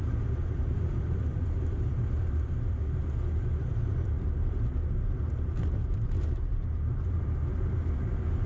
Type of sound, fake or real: fake